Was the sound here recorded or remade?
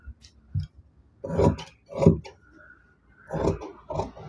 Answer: recorded